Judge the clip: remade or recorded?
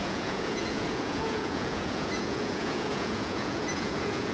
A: remade